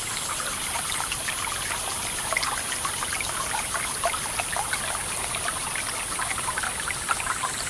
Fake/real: real